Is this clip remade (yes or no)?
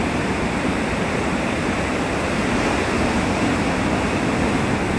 yes